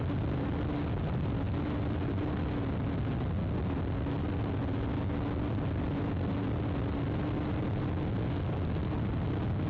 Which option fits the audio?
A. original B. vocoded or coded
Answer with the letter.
A